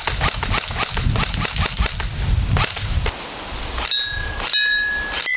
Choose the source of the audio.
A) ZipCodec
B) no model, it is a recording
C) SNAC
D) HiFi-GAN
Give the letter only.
B